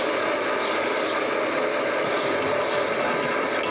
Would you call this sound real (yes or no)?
yes